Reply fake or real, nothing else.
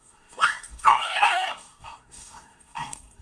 fake